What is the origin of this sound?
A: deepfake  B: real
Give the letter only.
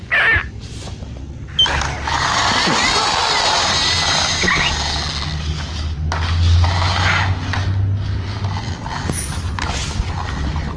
B